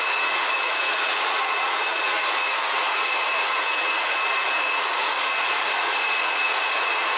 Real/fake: fake